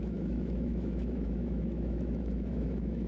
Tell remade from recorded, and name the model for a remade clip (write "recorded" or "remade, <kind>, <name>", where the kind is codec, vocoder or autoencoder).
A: remade, autoencoder, DAC-VAE